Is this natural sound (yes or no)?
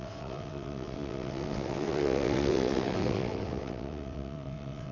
no